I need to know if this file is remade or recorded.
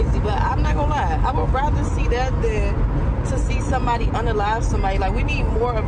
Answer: recorded